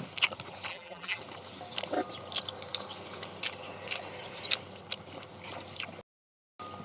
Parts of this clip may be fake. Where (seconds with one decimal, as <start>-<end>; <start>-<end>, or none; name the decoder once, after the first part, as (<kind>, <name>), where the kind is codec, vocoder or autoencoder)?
0.7-1.2 (vocoder, BigVGAN v2)

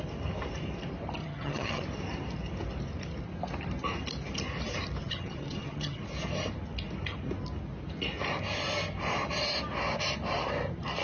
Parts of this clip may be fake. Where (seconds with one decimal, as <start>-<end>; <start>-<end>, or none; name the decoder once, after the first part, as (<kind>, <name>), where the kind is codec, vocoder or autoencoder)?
1.2-1.8 (vocoder, HiFi-GAN); 5.0-6.0

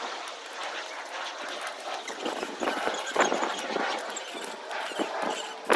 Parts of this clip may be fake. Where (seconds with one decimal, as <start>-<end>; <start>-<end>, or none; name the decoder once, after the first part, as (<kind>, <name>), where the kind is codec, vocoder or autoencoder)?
none

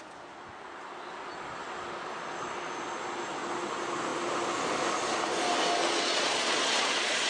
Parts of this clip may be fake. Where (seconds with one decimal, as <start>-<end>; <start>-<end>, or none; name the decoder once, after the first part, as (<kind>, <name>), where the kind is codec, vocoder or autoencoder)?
5.8-7.3 (vocoder, Vocos)